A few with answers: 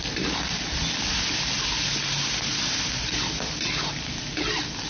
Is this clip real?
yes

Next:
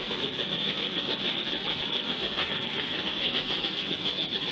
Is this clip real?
no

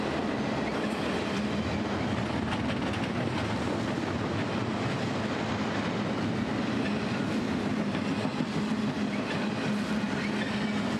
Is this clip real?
yes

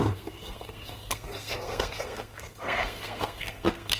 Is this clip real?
no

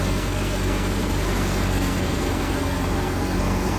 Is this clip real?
no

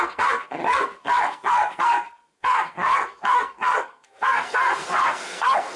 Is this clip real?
no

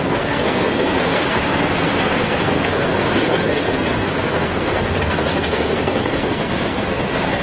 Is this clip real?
no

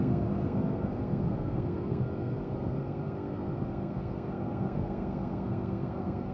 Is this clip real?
no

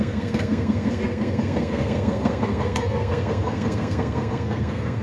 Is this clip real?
no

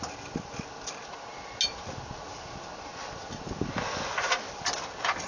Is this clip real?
yes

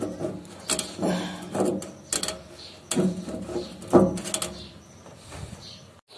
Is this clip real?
yes